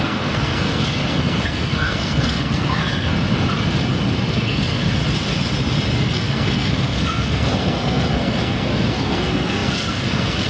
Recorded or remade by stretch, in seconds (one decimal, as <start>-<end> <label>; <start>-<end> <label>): 0.0-3.1 remade; 3.1-4.3 recorded; 4.3-5.0 remade; 5.0-6.0 recorded; 6.0-10.5 remade